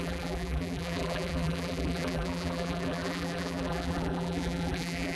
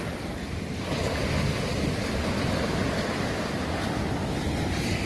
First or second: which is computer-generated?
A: first